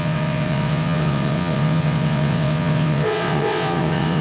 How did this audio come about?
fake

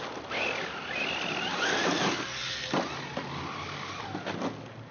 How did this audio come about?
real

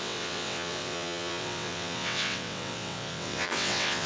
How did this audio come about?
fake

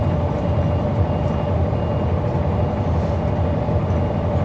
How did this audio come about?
real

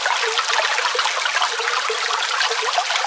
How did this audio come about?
real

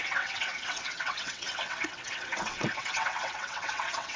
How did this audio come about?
fake